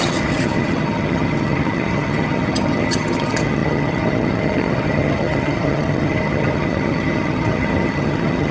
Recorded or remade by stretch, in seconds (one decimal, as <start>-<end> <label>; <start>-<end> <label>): 0.0-8.5 remade